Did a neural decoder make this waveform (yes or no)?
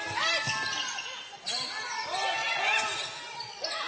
no